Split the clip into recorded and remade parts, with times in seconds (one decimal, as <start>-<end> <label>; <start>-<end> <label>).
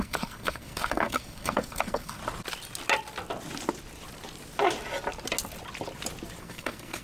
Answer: 0.0-2.2 remade; 2.2-6.4 recorded; 6.4-7.0 remade